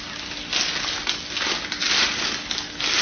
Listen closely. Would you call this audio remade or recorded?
recorded